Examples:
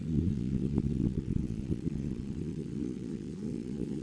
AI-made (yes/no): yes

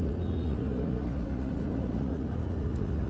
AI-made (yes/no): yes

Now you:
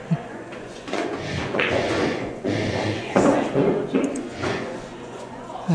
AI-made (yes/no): yes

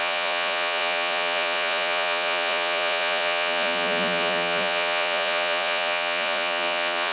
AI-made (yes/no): yes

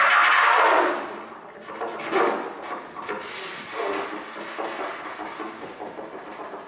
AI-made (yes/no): no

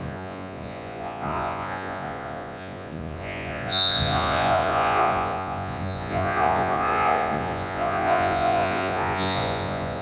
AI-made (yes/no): yes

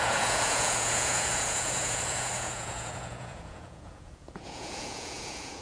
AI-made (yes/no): yes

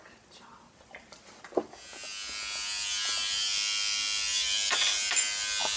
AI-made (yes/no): no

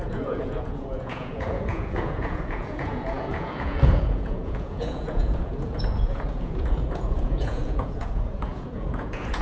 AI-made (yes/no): yes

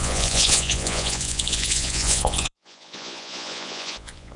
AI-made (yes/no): yes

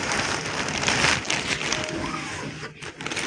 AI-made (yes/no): no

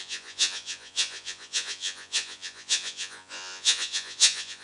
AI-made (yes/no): yes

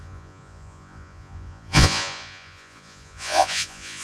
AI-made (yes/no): yes